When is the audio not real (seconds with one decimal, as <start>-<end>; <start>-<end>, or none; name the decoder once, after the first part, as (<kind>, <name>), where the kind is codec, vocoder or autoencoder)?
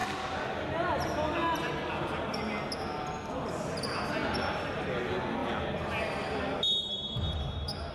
none